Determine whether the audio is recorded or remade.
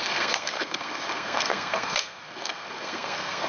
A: remade